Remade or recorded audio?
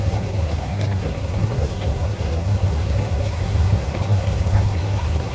remade